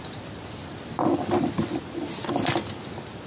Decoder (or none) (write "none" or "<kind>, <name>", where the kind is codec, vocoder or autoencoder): none